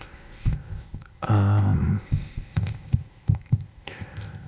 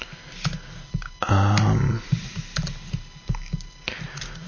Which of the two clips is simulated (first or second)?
first